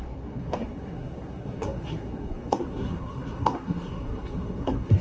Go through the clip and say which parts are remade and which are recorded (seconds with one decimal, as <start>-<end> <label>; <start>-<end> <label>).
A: 0.0-5.0 remade